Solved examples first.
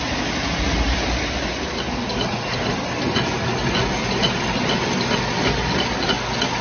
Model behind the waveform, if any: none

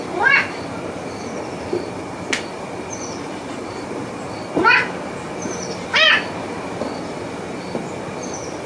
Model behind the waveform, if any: none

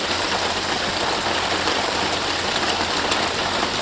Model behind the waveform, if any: none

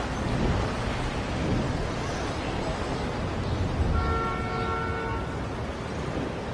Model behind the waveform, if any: none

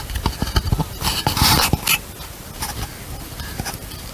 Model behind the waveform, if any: none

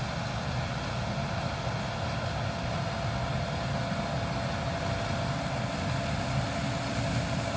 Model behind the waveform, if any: none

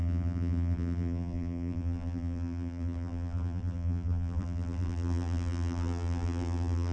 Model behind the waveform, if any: vocoder, BigVGAN v2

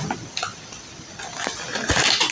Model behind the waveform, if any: none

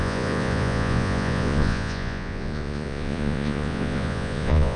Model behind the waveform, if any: vocoder, Vocos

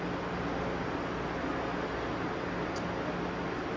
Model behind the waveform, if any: none